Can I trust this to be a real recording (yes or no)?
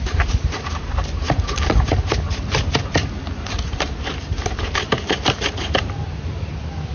no